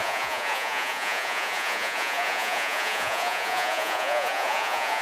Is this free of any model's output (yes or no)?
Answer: no